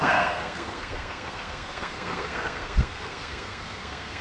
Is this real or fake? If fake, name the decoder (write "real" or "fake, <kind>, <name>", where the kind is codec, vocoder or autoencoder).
fake, codec, SNAC